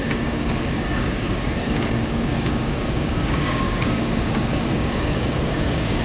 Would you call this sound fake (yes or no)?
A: yes